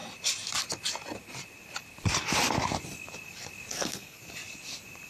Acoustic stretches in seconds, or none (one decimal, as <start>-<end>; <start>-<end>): 0.0-3.7; 4.2-5.1